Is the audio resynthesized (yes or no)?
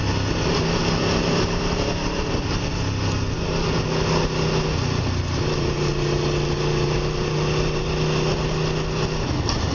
no